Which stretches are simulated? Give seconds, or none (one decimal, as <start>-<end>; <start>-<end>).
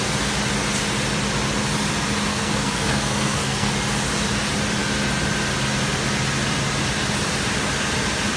2.3-3.7